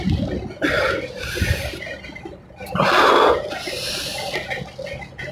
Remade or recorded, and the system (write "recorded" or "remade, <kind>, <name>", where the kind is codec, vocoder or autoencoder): recorded